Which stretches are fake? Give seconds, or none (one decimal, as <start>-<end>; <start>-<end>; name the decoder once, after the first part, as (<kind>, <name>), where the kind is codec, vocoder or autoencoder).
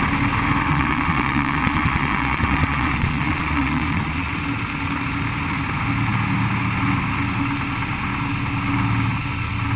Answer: 0.7-4.3 (vocoder, Vocos)